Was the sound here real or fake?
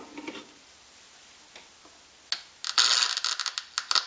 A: real